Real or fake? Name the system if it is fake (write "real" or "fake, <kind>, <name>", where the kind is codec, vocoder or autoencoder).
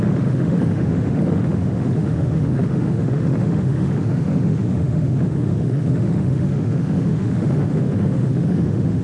fake, autoencoder, DAC-VAE